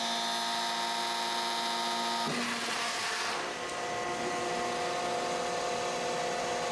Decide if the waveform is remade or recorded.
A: recorded